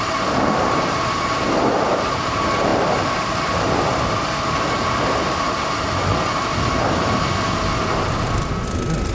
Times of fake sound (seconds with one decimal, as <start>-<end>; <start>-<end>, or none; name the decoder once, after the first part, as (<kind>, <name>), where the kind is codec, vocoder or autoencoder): 0.0-3.9 (vocoder, BigVGAN v2)